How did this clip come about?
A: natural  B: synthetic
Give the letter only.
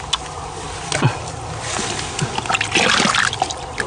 A